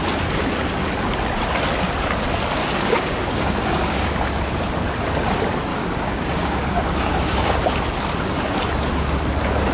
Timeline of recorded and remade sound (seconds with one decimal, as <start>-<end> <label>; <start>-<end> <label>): 0.0-2.6 recorded; 2.6-4.1 remade; 4.1-5.7 recorded; 5.7-7.8 remade; 7.8-9.7 recorded